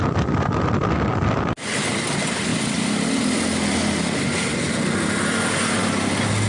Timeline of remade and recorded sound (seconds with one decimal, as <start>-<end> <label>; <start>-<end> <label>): 0.0-6.5 recorded